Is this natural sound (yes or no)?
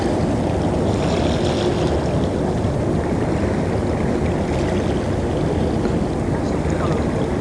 yes